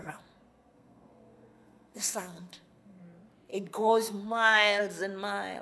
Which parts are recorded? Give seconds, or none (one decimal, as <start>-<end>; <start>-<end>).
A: 3.0-3.5; 4.8-5.6